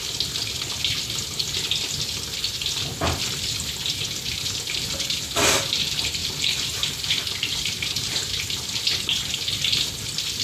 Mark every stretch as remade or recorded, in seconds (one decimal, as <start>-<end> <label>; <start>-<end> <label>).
0.0-6.2 recorded; 6.2-8.3 remade; 8.3-10.4 recorded